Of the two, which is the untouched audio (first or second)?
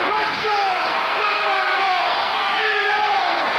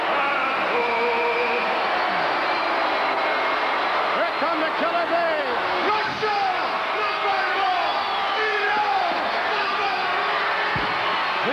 second